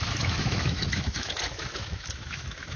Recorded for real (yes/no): no